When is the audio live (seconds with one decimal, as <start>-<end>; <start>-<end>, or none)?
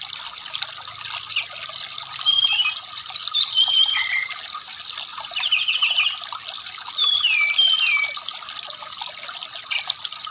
0.0-5.1; 5.7-10.3